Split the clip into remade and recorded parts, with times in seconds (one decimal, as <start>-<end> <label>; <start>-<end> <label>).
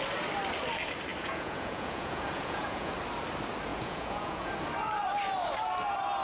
0.0-1.1 recorded; 1.1-2.9 remade; 2.9-3.7 recorded; 3.7-4.5 remade; 4.5-6.2 recorded